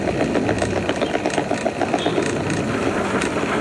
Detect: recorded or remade recorded